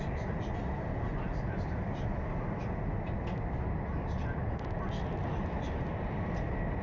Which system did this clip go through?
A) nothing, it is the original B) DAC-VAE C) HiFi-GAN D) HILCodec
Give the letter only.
A